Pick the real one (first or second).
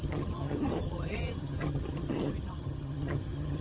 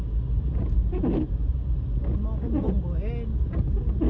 second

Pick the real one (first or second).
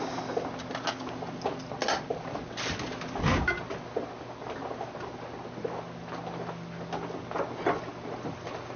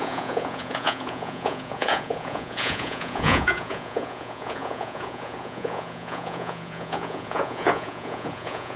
first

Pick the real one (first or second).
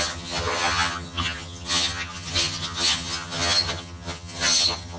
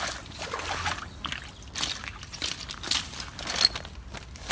second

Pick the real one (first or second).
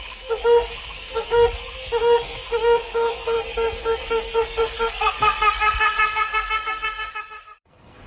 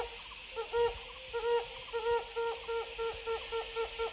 second